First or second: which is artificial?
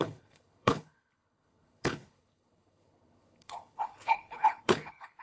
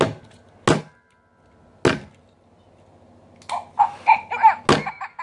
first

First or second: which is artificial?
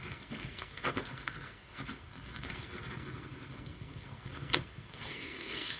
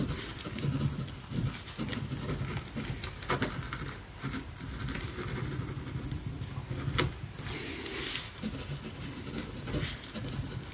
first